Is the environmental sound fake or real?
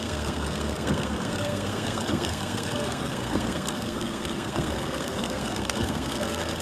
fake